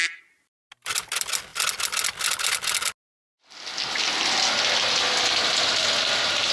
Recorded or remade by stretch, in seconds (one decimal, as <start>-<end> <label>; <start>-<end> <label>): 0.0-6.5 recorded